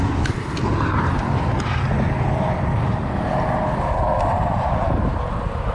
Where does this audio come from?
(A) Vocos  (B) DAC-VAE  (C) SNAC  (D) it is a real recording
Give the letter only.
D